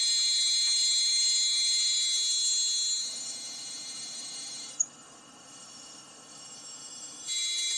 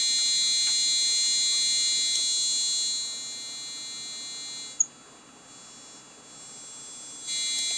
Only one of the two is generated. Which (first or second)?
first